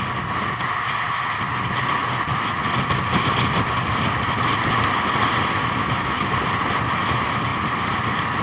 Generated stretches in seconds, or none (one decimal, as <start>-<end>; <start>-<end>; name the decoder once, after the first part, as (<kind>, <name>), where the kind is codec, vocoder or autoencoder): 5.6-6.3 (autoencoder, DAC-VAE)